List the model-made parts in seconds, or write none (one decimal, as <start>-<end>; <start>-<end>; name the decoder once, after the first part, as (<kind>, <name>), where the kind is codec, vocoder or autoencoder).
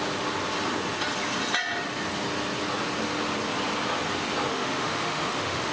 4.5-5.7 (autoencoder, DAC-VAE)